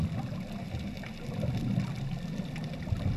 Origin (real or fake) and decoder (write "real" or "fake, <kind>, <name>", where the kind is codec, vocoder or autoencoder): real